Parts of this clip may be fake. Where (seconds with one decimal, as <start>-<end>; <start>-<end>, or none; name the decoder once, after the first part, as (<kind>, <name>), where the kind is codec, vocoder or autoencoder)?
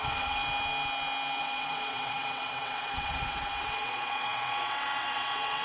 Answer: 0.0-0.4 (vocoder, WaveNeXt); 1.4-5.6